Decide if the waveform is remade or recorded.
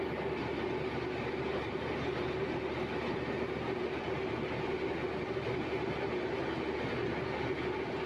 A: recorded